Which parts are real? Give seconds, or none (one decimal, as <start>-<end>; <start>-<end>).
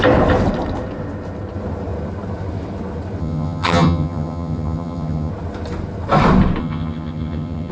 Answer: 0.0-3.2; 5.3-6.6